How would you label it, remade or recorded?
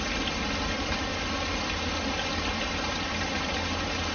recorded